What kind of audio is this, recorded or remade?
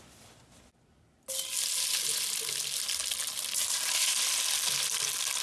recorded